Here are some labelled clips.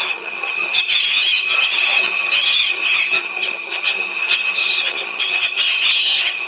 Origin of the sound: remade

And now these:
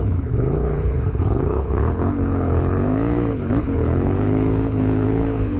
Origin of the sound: remade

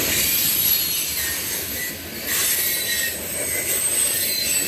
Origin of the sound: recorded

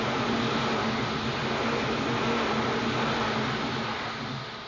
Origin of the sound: recorded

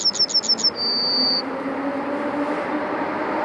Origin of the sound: recorded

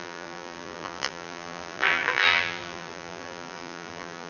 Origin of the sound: remade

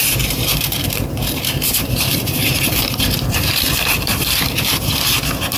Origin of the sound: remade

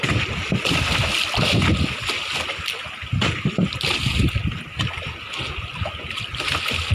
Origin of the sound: recorded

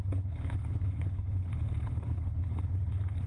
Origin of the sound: remade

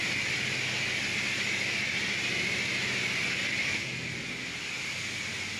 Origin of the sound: recorded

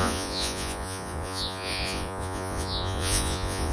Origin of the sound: remade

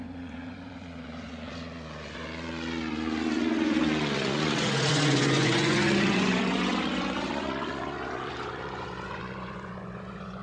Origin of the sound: remade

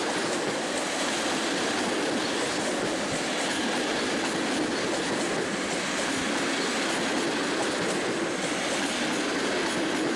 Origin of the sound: recorded